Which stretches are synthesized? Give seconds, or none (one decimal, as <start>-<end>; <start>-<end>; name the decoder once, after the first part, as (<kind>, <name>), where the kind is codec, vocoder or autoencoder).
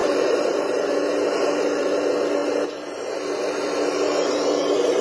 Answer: 0.0-0.9 (vocoder, BigVGAN v2)